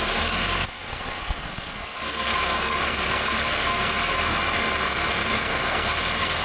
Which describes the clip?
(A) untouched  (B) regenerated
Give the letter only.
B